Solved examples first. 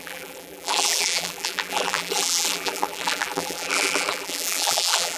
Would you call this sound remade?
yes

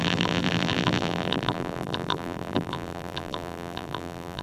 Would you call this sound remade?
yes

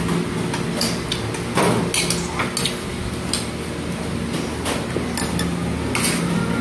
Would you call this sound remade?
no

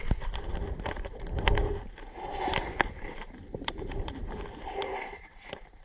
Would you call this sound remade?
yes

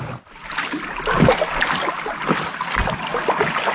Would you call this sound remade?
no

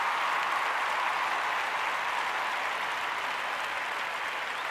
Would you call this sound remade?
no